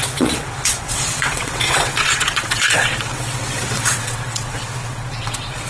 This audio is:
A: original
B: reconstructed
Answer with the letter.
B